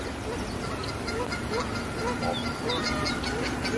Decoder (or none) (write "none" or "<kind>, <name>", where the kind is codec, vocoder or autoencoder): none